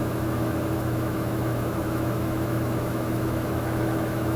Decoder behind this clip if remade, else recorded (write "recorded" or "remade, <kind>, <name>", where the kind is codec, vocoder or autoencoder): remade, autoencoder, DAC-VAE